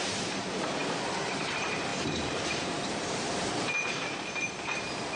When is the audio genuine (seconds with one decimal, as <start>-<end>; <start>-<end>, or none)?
none